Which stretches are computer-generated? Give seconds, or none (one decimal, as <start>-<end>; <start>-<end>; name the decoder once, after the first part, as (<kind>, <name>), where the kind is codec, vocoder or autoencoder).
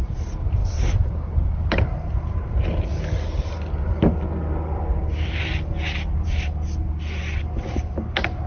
none